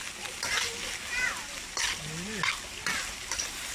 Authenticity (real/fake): real